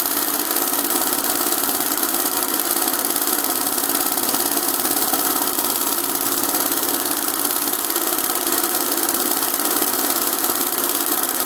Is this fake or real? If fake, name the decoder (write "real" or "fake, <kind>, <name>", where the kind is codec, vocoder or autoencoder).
fake, vocoder, BigVGAN v2